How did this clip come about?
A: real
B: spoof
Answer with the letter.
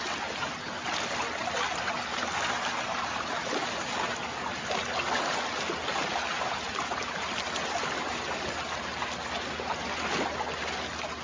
A